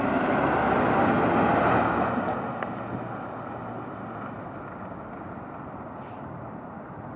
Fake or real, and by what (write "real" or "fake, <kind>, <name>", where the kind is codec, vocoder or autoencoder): real